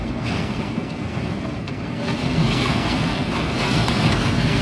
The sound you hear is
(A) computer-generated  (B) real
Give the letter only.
A